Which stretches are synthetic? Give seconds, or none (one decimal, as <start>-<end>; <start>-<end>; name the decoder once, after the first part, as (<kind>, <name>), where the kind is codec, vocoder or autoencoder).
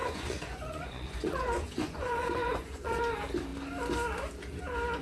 0.0-3.0 (vocoder, Vocos)